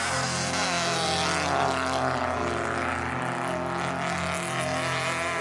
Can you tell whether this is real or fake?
real